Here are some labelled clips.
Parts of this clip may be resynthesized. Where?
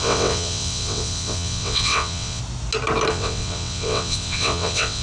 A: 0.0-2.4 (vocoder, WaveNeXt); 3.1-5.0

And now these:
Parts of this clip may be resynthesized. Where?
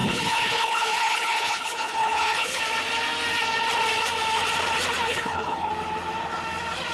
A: 0.0-2.6 (codec, HILCodec); 5.1-5.7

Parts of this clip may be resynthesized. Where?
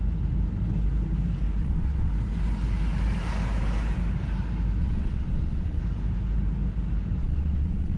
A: 1.6-2.1 (vocoder, WaveNeXt); 4.8-5.8; 7.2-8.0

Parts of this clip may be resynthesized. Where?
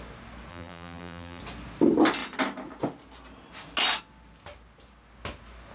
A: 0.5-1.4 (vocoder, BigVGAN v2)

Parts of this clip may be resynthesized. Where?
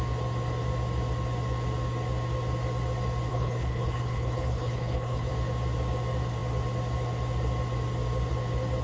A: 3.3-5.3 (codec, HILCodec)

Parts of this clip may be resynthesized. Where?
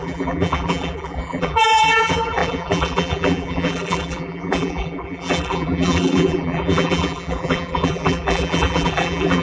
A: 0.0-9.4 (vocoder, BigVGAN v2)